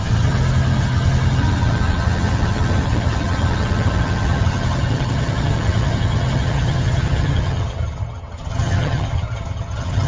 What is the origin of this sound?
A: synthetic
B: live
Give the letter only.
A